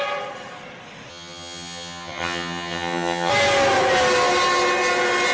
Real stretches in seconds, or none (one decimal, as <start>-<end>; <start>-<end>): 0.0-1.1; 3.3-5.3

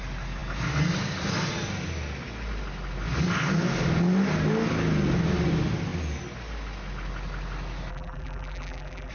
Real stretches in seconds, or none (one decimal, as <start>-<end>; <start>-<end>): 0.0-7.9